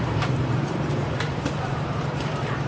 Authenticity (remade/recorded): remade